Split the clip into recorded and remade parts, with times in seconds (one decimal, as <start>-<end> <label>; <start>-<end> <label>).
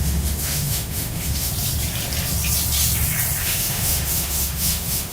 0.0-1.5 remade; 1.5-3.4 recorded; 3.4-5.1 remade